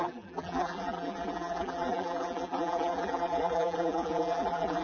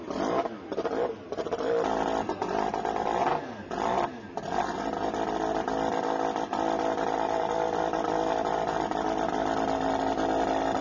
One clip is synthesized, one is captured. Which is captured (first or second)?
second